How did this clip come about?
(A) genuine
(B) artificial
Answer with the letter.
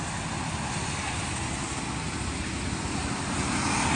A